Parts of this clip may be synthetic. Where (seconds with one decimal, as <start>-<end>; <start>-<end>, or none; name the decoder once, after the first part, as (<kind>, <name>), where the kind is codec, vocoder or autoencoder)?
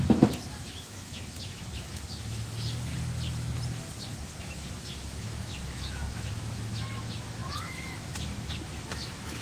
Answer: 0.0-2.9 (autoencoder, DAC-VAE); 4.4-9.4